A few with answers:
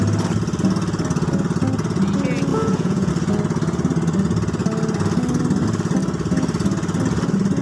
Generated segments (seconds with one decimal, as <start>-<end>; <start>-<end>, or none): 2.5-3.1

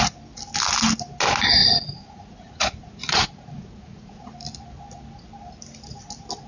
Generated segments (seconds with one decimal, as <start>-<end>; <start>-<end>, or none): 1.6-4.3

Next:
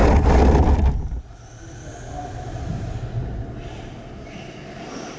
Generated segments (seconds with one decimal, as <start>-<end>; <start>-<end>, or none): none

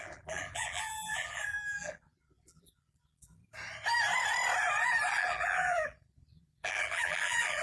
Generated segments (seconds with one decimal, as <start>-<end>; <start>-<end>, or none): 0.0-3.4; 5.1-7.6